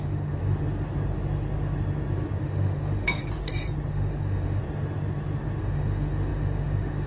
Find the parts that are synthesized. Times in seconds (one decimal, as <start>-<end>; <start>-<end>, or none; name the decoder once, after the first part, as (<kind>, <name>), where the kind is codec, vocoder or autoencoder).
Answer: 0.0-0.4 (autoencoder, DAC-VAE); 2.4-3.2; 3.9-4.6; 5.6-7.1

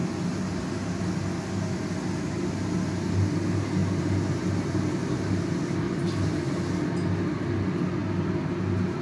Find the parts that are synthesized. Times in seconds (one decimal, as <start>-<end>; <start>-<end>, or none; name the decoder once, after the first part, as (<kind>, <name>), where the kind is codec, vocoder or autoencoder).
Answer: none

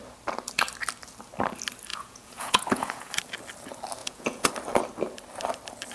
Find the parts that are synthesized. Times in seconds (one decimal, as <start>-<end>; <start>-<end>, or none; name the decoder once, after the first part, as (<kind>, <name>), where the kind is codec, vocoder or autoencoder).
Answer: 1.9-3.1 (vocoder, Vocos); 4.0-4.5

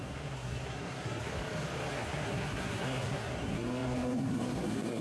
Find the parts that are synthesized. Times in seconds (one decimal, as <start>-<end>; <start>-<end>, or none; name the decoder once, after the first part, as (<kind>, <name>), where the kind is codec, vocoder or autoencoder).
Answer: 0.0-1.3 (codec, SNAC); 1.9-5.0

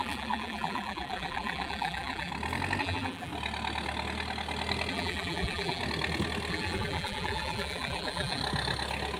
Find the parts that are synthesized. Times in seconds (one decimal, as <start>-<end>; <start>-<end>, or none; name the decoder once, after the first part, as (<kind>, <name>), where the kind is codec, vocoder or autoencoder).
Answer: 0.0-2.3 (vocoder, BigVGAN v2); 2.8-3.3; 4.9-5.8; 6.5-8.4

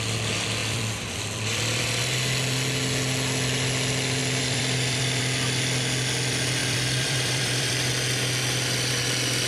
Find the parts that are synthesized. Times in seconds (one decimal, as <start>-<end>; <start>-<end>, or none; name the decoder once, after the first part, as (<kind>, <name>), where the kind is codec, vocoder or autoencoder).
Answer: 0.6-1.8 (vocoder, BigVGAN v2); 4.2-5.2; 6.6-7.7